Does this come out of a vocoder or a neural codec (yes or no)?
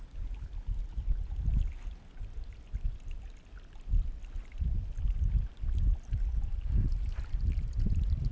no